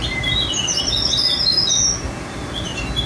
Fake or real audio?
real